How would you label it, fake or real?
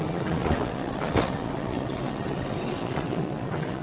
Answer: fake